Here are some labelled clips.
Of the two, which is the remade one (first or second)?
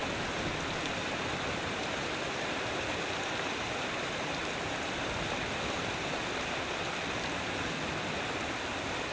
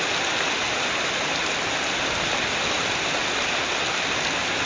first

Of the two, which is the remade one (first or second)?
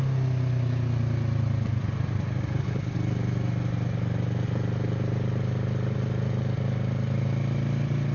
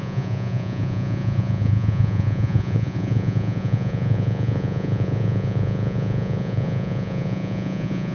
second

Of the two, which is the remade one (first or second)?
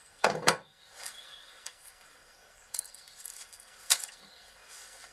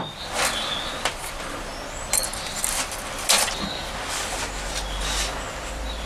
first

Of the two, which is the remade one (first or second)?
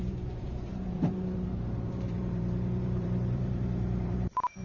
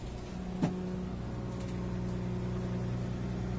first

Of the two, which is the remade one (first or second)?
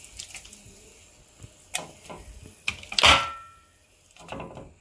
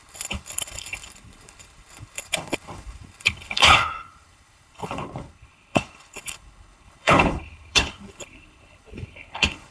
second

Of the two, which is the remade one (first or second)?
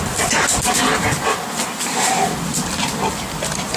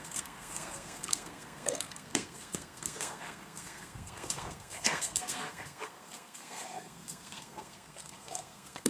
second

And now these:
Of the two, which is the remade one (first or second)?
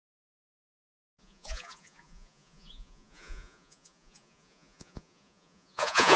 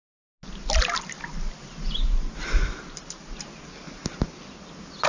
first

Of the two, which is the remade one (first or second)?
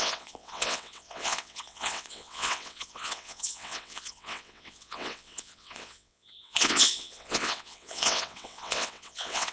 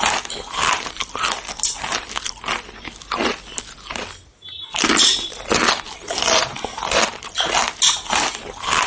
first